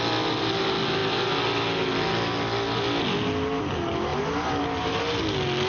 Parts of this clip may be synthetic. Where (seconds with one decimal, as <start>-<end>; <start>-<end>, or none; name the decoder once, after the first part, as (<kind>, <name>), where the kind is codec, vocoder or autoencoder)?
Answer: 4.1-5.0 (vocoder, BigVGAN v2)